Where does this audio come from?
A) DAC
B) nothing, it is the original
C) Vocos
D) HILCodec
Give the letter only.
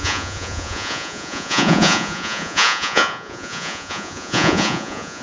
C